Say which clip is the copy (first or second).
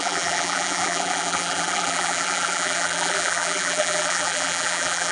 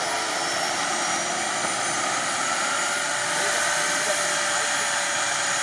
first